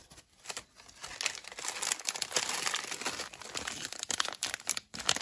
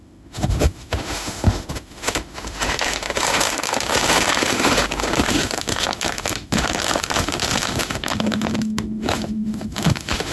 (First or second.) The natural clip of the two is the first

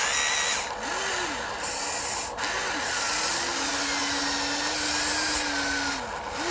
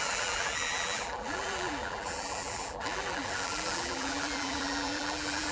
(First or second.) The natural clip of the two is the first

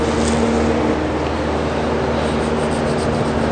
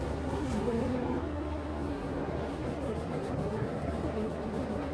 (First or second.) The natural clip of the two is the first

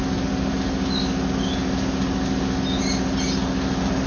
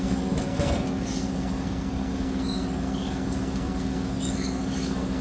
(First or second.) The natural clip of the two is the first